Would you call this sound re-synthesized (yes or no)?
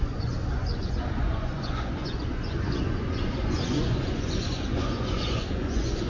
yes